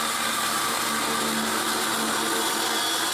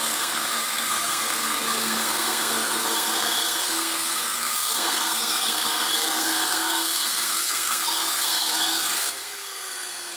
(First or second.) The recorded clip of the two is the first